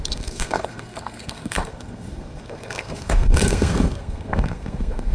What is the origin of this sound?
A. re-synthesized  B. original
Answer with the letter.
A